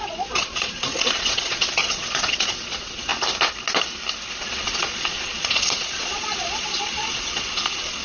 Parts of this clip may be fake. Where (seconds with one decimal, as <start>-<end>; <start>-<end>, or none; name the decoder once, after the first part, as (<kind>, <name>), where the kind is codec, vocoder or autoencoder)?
0.0-3.1 (vocoder, Vocos); 4.4-8.0